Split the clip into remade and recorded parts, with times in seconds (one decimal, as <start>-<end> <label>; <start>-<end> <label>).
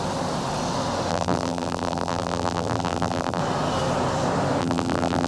0.0-1.1 recorded; 1.1-3.4 remade; 3.4-4.6 recorded; 4.6-5.3 remade